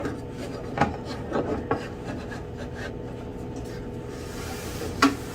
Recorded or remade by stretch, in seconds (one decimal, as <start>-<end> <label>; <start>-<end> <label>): 0.0-5.3 recorded